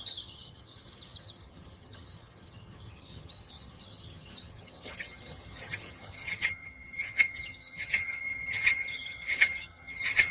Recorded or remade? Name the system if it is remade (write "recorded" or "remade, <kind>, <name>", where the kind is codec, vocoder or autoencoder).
remade, vocoder, HiFi-GAN